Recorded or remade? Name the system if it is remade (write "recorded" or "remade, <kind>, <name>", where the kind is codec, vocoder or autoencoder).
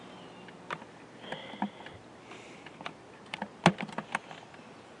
recorded